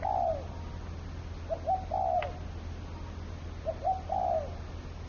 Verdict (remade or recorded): recorded